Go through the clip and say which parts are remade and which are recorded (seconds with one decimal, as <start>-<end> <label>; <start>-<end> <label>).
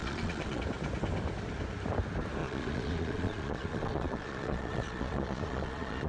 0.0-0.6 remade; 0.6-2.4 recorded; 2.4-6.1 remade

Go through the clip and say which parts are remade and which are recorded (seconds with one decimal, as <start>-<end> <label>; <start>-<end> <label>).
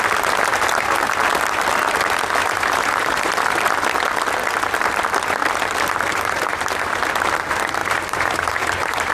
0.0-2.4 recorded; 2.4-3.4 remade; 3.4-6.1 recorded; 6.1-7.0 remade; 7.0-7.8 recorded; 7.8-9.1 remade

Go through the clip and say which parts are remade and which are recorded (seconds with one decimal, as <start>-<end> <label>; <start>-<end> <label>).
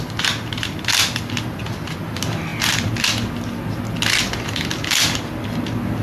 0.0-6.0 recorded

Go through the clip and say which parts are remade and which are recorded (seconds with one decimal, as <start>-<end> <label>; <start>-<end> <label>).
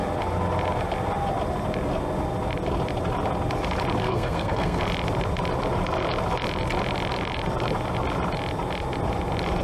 0.0-4.0 recorded; 4.0-4.8 remade; 4.8-9.6 recorded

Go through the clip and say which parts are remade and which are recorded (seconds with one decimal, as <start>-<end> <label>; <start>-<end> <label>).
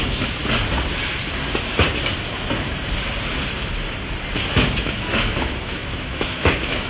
0.0-0.4 remade; 0.4-4.5 recorded; 4.5-6.9 remade